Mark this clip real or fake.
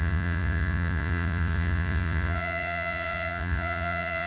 fake